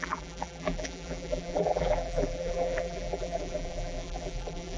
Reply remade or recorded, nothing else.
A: remade